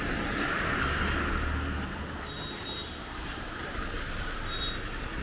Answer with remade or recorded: recorded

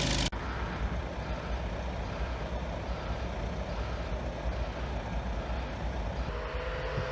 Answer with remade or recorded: recorded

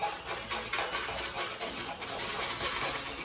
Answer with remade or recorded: recorded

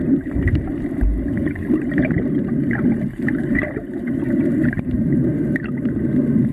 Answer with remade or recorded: remade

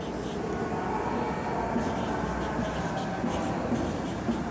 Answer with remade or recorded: recorded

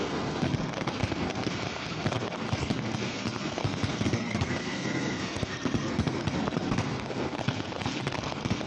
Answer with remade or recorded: remade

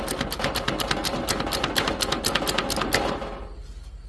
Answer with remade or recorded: recorded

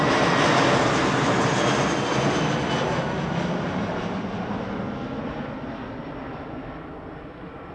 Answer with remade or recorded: recorded